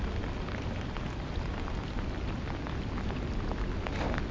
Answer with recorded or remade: recorded